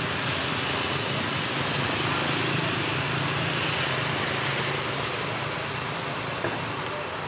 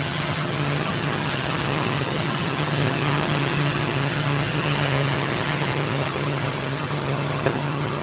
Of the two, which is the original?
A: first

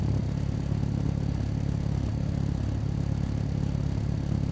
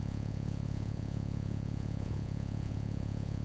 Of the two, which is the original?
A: first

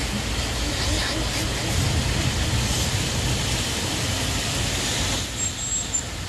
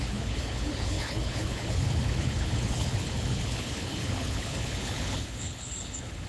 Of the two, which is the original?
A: first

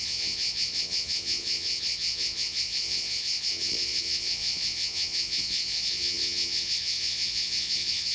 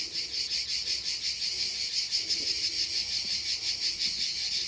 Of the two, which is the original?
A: second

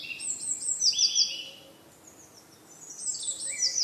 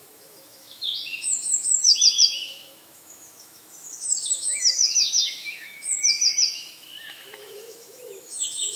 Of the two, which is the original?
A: first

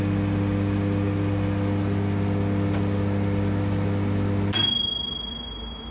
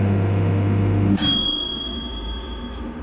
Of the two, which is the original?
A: first